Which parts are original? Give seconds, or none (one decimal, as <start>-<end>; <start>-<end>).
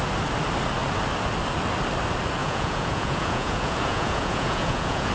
0.0-2.4